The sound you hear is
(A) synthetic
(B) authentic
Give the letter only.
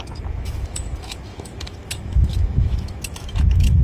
A